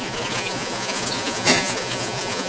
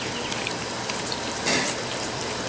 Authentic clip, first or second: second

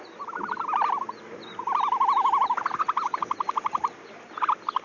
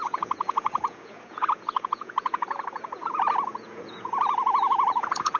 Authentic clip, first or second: first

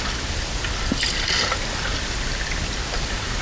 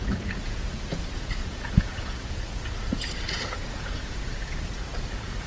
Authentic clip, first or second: first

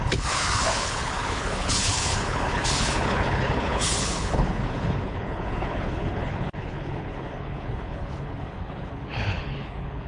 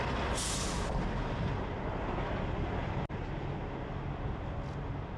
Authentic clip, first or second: second